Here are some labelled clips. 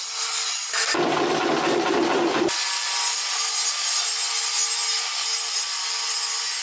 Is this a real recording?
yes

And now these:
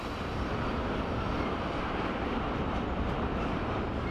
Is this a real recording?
no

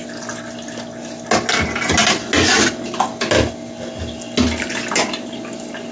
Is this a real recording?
yes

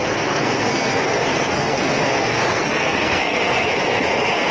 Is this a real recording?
no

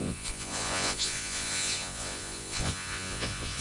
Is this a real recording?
no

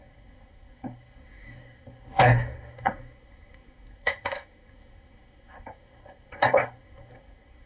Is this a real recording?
no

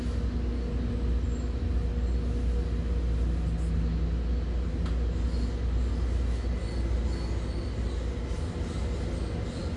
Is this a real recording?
yes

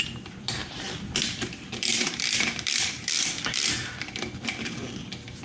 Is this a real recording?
no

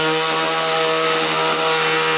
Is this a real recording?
yes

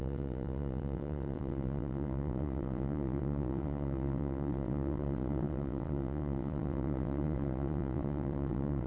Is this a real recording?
no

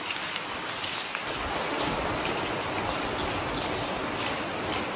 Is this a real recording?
yes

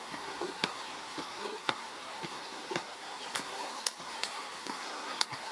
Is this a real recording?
no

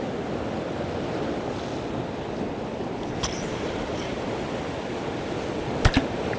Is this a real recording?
yes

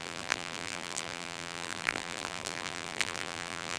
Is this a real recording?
no